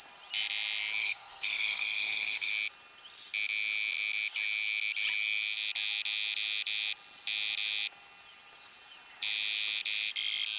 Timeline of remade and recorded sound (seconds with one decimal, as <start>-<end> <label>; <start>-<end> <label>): 0.0-1.0 recorded; 1.0-2.5 remade; 2.5-10.6 recorded